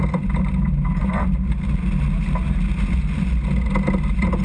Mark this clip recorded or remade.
recorded